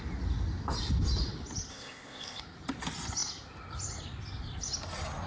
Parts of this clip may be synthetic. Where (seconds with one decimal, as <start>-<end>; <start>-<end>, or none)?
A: 1.7-2.4